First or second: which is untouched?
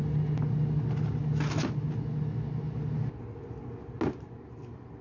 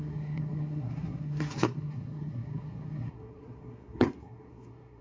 first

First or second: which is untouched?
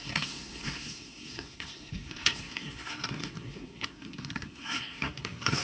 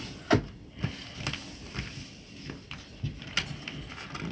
second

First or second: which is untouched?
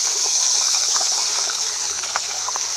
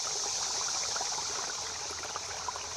second